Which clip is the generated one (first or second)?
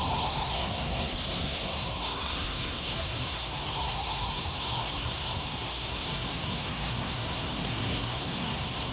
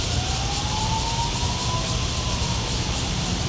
first